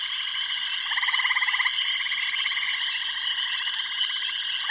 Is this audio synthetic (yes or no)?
no